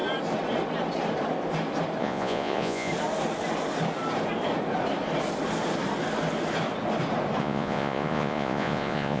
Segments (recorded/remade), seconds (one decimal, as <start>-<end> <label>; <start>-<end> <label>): 0.0-2.0 recorded; 2.0-2.9 remade; 2.9-7.4 recorded; 7.4-9.2 remade